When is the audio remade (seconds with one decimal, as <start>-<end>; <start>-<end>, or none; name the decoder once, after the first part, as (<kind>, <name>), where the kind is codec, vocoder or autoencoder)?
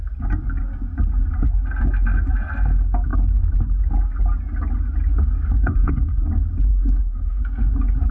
5.6-6.3 (codec, SNAC); 6.7-7.4